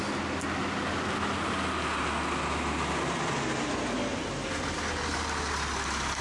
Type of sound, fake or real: real